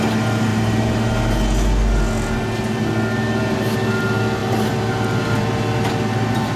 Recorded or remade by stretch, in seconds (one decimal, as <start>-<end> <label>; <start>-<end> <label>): 0.0-0.5 recorded; 0.5-1.4 remade; 1.4-6.6 recorded